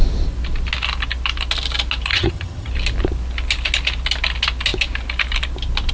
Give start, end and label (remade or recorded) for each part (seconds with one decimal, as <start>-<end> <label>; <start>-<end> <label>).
0.0-2.1 recorded; 2.1-2.7 remade; 2.7-5.9 recorded